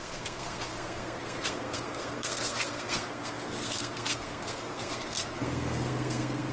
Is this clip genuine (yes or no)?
no